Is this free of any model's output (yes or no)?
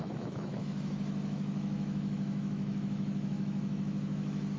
no